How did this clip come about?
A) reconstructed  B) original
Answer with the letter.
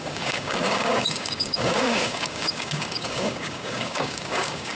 A